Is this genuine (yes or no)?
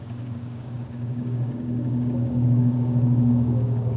no